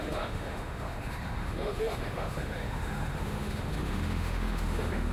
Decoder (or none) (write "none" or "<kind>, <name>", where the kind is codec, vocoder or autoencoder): autoencoder, DAC-VAE